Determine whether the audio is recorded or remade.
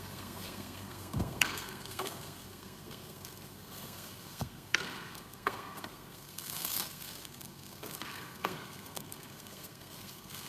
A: remade